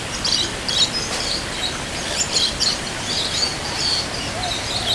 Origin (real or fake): real